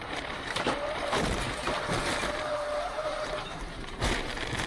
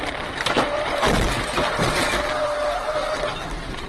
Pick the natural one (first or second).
second